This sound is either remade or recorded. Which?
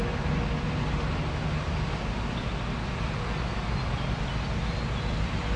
recorded